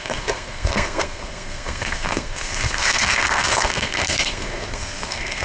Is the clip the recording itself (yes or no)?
no